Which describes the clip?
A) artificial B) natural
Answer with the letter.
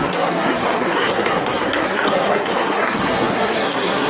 A